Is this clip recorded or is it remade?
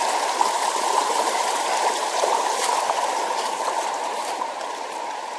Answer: remade